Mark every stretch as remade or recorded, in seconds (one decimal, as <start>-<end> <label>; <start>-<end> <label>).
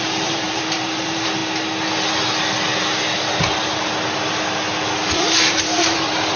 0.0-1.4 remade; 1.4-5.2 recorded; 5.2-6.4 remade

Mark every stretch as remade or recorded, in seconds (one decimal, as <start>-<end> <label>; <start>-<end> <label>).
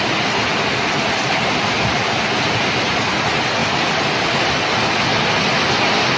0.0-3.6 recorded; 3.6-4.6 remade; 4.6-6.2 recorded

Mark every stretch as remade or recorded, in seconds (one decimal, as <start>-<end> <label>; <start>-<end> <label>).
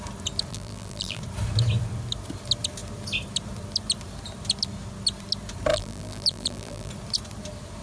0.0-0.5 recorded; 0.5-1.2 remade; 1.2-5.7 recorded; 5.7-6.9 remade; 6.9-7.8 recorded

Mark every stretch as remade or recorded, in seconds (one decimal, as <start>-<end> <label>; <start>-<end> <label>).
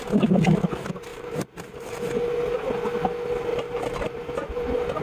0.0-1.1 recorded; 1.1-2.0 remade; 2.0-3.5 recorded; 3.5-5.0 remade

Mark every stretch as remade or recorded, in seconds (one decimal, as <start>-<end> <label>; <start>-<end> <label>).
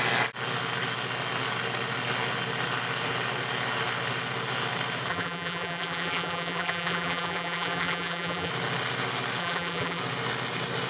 0.0-5.1 recorded; 5.1-8.5 remade; 8.5-9.4 recorded; 9.4-10.0 remade; 10.0-10.9 recorded